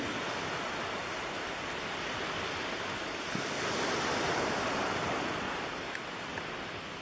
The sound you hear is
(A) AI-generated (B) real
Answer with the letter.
B